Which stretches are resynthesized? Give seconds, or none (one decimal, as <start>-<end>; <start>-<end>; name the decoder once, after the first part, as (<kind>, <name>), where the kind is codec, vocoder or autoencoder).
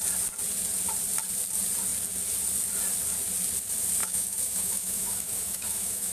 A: 4.0-6.1 (autoencoder, DAC-VAE)